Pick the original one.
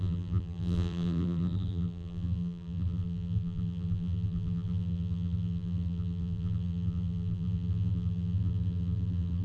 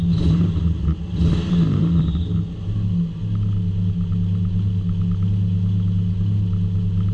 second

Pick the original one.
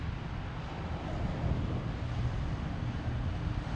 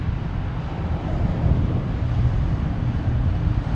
first